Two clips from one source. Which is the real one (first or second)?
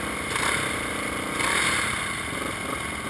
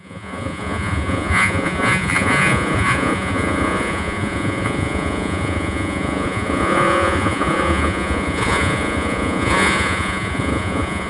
first